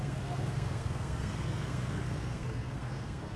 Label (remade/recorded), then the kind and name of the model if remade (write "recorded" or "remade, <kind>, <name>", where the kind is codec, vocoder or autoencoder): remade, codec, SNAC